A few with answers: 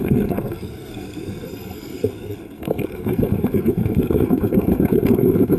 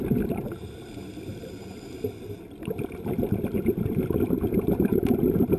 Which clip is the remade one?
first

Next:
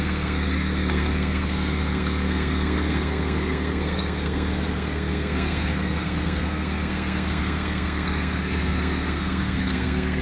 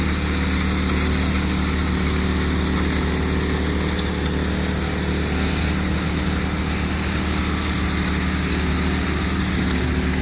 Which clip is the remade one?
first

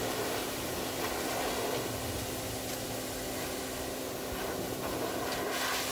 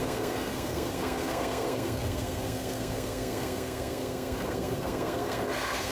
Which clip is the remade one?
second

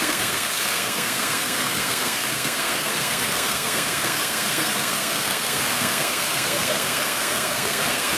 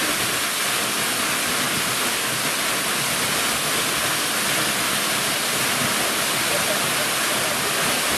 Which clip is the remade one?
first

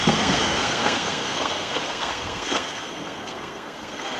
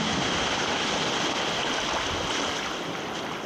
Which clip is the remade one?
first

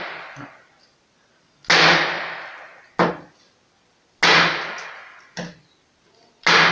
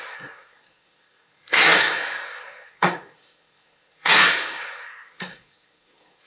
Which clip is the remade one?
second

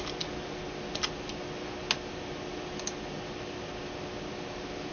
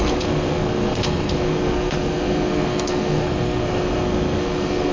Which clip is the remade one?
second